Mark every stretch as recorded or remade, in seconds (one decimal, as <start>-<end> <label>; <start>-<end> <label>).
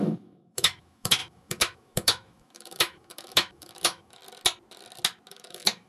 0.0-4.2 remade; 4.2-5.3 recorded; 5.3-5.9 remade